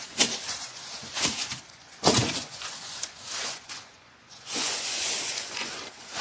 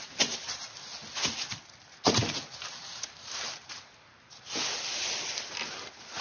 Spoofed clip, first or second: first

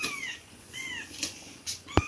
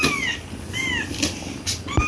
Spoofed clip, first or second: first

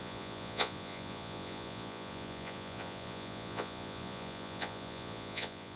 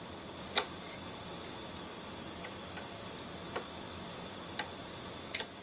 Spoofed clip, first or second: first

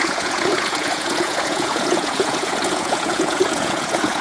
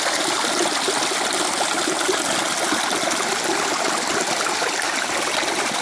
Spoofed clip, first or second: first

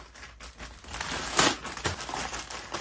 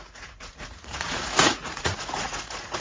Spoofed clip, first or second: second